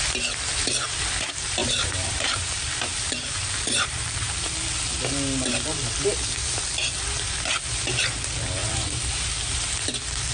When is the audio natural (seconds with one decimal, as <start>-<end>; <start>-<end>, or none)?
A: 0.0-1.6; 4.3-8.6; 9.3-10.3